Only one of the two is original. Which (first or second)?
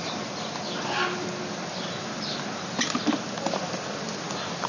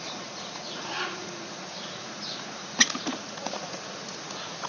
first